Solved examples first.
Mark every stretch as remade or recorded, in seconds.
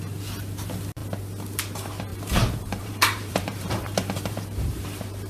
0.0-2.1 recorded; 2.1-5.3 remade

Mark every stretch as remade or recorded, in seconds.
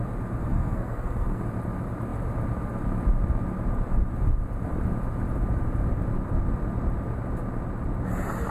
0.0-0.4 recorded; 0.4-1.4 remade; 1.4-8.5 recorded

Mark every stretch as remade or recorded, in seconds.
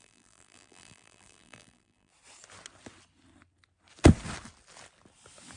0.0-2.1 remade; 2.1-5.6 recorded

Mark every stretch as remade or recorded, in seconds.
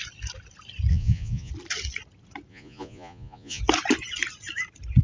0.0-0.9 recorded; 0.9-1.5 remade; 1.5-2.5 recorded; 2.5-3.6 remade; 3.6-5.0 recorded